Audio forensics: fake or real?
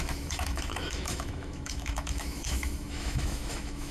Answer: fake